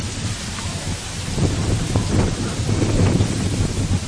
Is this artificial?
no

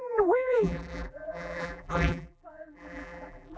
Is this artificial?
yes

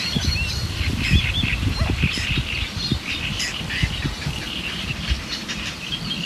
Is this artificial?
yes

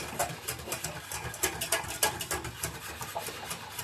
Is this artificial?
no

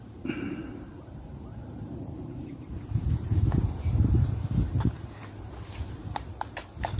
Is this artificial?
yes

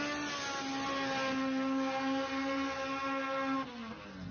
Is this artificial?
no